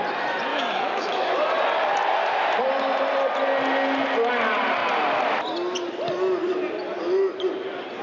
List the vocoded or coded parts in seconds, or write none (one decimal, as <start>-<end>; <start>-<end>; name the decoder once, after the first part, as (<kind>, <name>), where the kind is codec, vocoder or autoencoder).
0.5-1.3 (autoencoder, DAC-VAE)